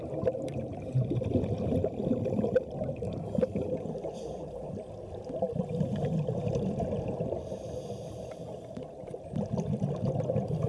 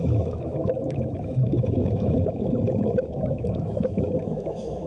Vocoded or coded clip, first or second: second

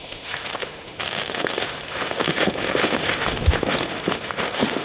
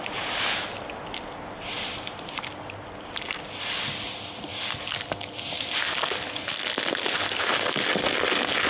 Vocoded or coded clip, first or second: first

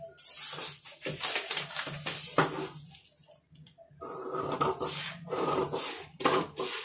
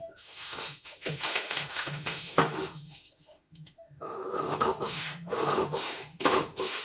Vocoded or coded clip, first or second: second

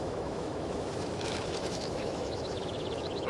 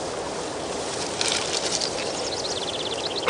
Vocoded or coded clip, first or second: first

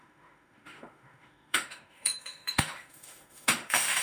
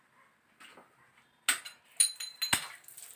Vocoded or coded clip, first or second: first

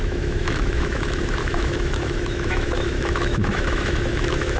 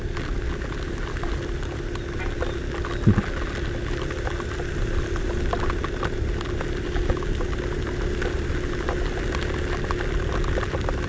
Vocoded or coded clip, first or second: first